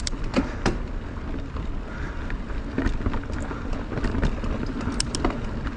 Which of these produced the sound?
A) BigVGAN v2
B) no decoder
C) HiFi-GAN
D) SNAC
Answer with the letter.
B